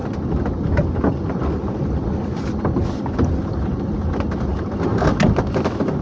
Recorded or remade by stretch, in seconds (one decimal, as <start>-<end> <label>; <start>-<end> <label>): 0.0-6.0 recorded